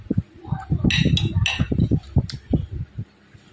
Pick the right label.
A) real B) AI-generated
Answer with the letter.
A